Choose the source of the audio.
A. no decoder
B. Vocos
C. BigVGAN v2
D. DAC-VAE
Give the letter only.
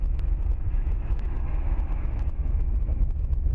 D